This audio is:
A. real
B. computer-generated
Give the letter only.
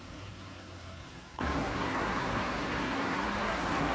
B